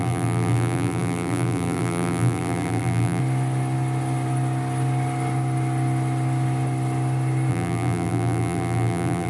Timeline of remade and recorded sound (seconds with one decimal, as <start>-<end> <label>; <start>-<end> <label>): 0.0-3.2 remade; 3.2-7.5 recorded; 7.5-9.3 remade